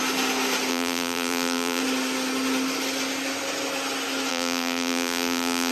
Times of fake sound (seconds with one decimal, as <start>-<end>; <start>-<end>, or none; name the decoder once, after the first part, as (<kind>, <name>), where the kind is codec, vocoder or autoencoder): 0.7-1.8 (vocoder, BigVGAN v2); 4.3-5.7